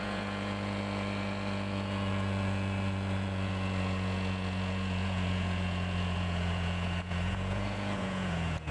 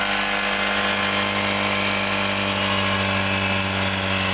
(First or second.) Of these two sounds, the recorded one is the second